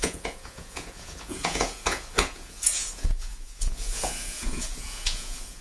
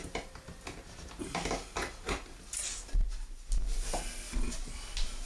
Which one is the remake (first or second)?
first